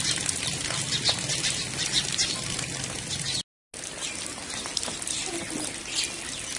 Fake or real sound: real